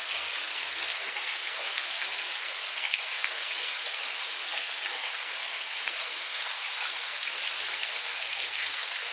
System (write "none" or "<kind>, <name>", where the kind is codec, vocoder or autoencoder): codec, SNAC